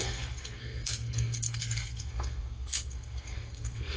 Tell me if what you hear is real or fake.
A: fake